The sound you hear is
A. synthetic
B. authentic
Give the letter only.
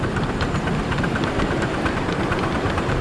B